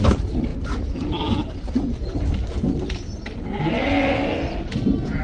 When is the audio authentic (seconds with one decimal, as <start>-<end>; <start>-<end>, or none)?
0.0-5.2